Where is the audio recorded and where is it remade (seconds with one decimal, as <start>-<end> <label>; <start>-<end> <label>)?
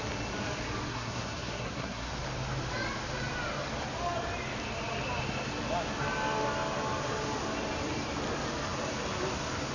0.0-0.9 recorded; 0.9-2.1 remade; 2.1-9.7 recorded